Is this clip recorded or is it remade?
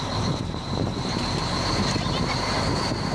remade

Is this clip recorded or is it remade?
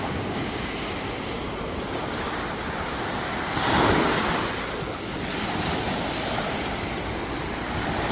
recorded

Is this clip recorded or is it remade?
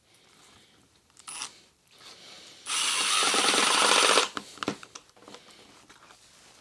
recorded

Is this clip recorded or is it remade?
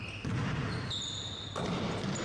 recorded